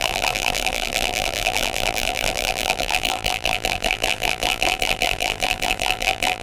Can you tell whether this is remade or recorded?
remade